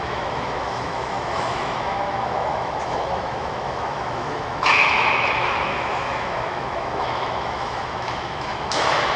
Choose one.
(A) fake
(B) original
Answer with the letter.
A